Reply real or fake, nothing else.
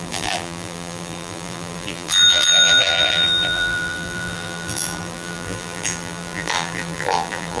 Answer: fake